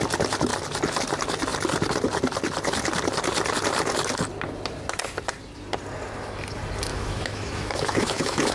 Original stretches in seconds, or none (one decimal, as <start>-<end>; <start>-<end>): 0.0-6.9